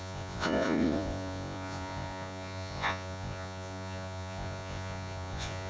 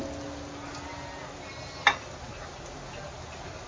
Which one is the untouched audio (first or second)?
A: second